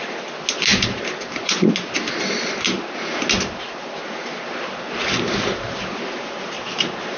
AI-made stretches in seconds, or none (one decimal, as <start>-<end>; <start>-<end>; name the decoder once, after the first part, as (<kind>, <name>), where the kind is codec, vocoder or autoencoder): none